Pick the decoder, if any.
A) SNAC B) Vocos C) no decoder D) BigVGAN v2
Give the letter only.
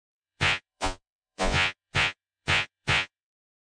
B